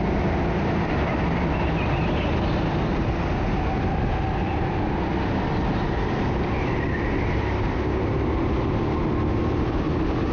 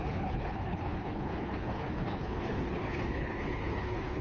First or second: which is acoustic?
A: first